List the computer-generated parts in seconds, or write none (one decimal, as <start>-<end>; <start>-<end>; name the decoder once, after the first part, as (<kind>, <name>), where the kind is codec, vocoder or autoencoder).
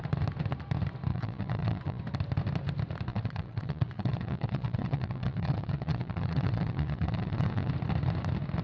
1.1-2.0 (vocoder, WaveNeXt); 3.1-7.7